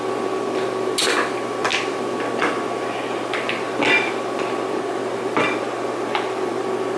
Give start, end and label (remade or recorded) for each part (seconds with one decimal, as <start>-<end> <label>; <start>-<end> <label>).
0.0-7.0 recorded